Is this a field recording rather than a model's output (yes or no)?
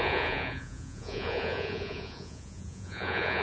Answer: no